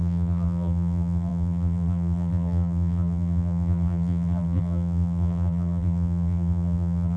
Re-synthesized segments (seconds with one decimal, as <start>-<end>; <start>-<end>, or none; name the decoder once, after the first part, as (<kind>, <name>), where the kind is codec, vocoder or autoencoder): 0.0-7.2 (vocoder, BigVGAN v2)

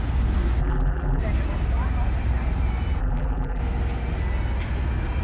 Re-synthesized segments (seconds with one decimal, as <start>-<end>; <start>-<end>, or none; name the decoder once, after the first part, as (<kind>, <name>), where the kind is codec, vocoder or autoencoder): 0.6-1.2 (vocoder, BigVGAN v2); 3.0-3.6

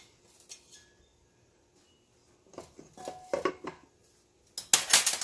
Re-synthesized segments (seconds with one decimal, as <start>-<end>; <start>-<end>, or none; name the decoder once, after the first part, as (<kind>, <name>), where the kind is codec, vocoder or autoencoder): none

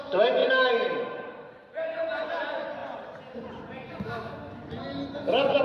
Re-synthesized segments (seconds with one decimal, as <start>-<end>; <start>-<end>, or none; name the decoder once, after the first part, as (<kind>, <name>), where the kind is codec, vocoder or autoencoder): 0.4-2.3 (vocoder, BigVGAN v2)

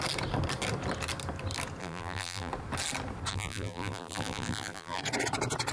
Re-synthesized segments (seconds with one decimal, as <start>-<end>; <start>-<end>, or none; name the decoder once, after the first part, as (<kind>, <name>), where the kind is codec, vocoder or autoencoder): 1.8-2.5 (vocoder, BigVGAN v2); 3.3-5.0

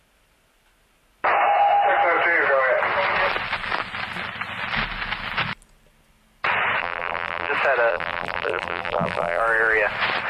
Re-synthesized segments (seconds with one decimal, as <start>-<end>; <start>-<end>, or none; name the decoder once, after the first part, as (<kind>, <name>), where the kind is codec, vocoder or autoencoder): 6.8-7.5 (vocoder, BigVGAN v2); 7.9-9.4

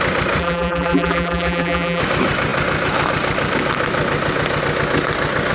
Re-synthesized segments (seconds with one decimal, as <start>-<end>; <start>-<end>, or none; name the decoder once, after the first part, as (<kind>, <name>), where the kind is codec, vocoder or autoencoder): 0.4-2.0 (vocoder, BigVGAN v2)